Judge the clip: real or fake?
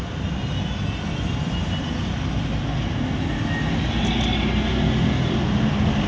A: real